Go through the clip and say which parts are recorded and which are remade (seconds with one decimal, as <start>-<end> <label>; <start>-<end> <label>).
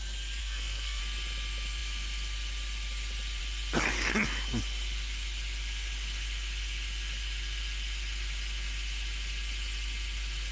0.0-0.4 recorded; 0.4-1.0 remade; 1.0-10.5 recorded